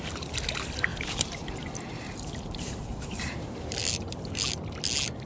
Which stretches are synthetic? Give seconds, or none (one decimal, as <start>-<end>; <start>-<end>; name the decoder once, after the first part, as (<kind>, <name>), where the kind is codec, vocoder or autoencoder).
0.9-3.8 (vocoder, BigVGAN v2)